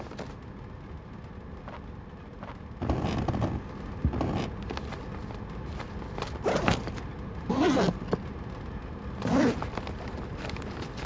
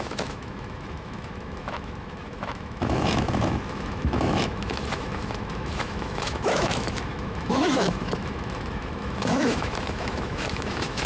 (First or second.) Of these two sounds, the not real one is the second